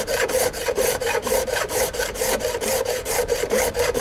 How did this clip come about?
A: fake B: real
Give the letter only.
A